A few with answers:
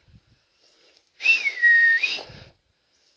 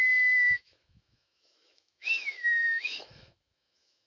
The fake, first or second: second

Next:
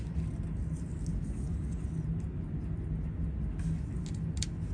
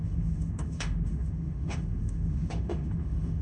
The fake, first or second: second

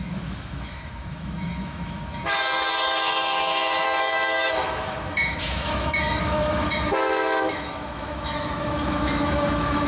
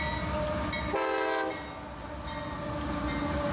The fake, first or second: first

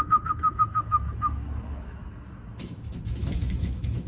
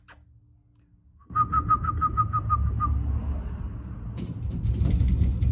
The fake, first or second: first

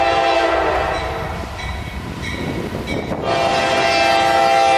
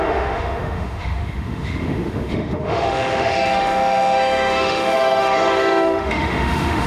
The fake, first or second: second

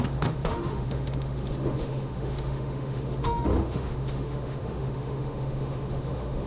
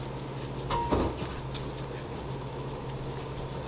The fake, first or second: first